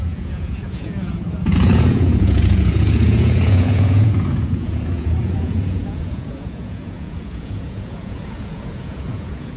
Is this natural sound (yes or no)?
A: no